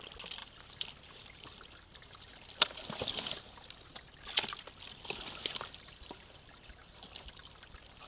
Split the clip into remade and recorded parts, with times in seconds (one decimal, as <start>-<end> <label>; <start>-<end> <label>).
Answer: 0.0-0.4 recorded; 0.4-2.3 remade; 2.3-6.8 recorded; 6.8-8.1 remade